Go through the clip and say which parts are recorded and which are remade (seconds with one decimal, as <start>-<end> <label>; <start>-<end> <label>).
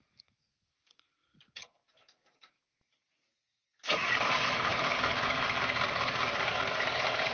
0.0-7.3 remade